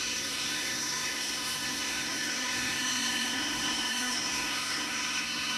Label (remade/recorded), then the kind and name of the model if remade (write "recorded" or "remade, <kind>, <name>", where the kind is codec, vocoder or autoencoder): remade, codec, SNAC